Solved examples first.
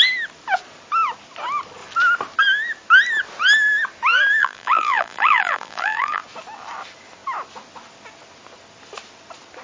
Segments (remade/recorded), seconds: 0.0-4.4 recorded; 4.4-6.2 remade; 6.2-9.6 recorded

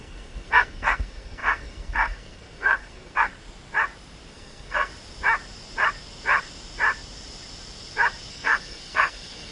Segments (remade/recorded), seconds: 0.0-3.3 remade; 3.3-4.3 recorded; 4.3-4.9 remade; 4.9-8.3 recorded; 8.3-9.5 remade

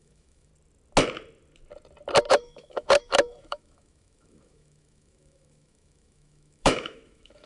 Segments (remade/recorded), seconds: 0.0-0.5 remade; 0.5-2.3 recorded; 2.3-7.5 remade